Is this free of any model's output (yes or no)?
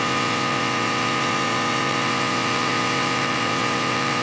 no